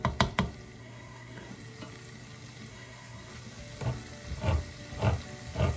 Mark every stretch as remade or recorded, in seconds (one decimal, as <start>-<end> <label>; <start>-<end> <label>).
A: 0.0-0.8 recorded; 0.8-1.5 remade; 1.5-2.7 recorded; 2.7-3.3 remade; 3.3-5.8 recorded